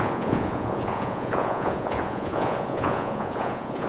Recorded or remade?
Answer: remade